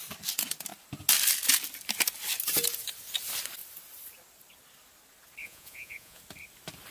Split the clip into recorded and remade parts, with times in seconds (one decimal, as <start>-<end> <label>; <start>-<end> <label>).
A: 0.0-5.4 recorded; 5.4-6.2 remade; 6.2-6.9 recorded